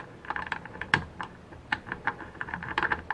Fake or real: fake